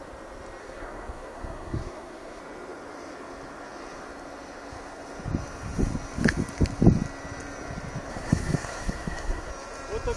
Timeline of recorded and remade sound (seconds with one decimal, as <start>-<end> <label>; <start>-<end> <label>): 0.0-0.6 recorded; 0.6-2.4 remade; 2.4-8.1 recorded; 8.1-9.5 remade; 9.5-10.2 recorded